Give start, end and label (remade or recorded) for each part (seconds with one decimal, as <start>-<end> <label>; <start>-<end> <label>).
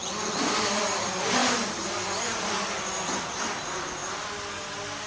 0.0-0.8 remade; 0.8-1.4 recorded; 1.4-2.6 remade; 2.6-5.1 recorded